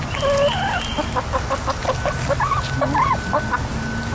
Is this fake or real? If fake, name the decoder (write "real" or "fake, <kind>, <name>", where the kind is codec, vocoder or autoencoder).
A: real